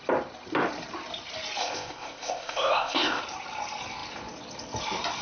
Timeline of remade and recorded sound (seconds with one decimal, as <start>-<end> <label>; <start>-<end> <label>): 0.0-1.6 recorded; 1.6-3.2 remade; 3.2-5.2 recorded